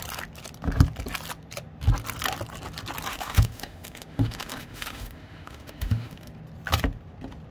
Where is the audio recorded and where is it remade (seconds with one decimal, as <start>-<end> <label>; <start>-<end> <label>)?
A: 0.0-3.1 recorded; 3.1-6.3 remade; 6.3-7.5 recorded